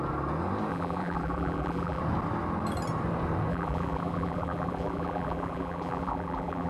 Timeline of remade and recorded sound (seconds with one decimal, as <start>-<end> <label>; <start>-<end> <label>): 0.0-0.7 recorded; 0.7-2.0 remade; 2.0-3.5 recorded; 3.5-6.7 remade